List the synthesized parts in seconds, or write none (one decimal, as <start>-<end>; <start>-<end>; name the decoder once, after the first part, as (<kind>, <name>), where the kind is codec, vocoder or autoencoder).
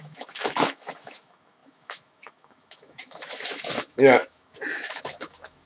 0.0-5.7 (autoencoder, DAC-VAE)